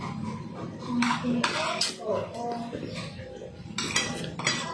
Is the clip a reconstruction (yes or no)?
no